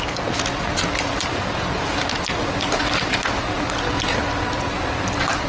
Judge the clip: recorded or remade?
recorded